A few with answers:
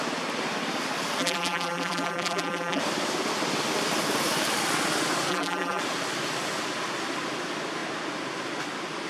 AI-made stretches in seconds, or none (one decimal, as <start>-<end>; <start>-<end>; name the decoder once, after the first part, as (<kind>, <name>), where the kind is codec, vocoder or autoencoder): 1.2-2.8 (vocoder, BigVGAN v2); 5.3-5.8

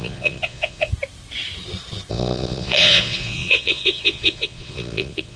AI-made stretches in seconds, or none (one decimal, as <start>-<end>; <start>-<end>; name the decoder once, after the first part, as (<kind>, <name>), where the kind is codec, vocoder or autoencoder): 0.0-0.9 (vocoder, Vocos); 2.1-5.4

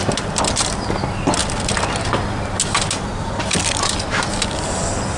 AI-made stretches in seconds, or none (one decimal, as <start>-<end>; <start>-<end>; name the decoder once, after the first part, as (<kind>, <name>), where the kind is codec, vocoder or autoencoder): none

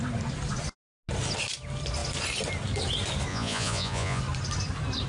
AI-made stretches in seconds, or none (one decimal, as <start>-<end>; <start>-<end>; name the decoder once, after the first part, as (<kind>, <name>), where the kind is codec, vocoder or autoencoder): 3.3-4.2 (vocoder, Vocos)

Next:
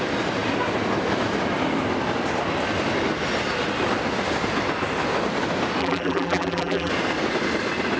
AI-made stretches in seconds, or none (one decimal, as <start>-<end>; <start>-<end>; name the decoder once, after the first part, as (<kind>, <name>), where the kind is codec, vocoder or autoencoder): 5.8-6.9 (vocoder, BigVGAN v2)

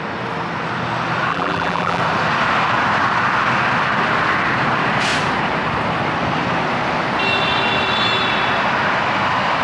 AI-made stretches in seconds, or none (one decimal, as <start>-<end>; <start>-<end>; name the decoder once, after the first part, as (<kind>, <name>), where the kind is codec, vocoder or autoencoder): 1.3-2.0 (vocoder, BigVGAN v2)